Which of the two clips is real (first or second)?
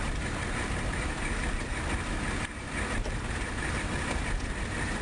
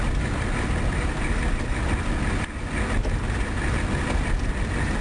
second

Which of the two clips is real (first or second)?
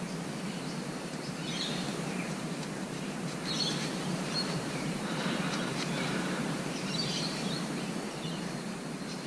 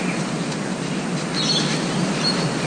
second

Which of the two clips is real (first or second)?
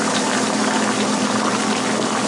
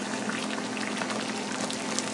second